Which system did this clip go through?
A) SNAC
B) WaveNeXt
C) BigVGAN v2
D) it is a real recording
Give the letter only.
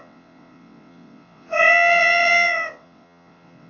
B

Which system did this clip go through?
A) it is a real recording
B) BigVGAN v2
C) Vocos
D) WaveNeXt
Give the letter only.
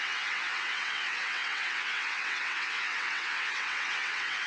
D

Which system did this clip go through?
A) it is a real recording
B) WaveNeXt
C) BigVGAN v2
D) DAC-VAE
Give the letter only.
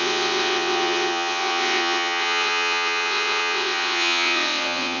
B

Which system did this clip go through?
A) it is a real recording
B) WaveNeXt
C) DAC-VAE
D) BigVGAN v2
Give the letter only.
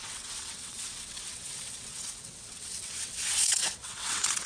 B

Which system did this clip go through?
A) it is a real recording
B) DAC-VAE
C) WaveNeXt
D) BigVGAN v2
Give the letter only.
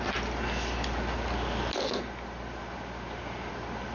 A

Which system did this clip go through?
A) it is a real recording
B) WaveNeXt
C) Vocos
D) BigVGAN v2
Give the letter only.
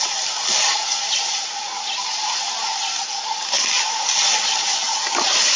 A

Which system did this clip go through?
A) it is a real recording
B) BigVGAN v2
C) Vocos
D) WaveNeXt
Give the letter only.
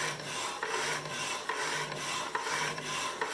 A